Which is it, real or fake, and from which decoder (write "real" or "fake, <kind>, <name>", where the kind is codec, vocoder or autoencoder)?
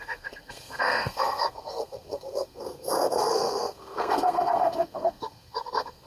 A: fake, codec, SNAC